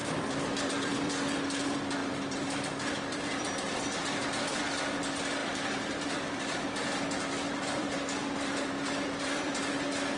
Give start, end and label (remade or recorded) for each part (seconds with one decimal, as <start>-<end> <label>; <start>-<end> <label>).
0.0-1.1 remade; 1.1-2.0 recorded; 2.0-3.4 remade; 3.4-5.4 recorded; 5.4-9.6 remade; 9.6-10.2 recorded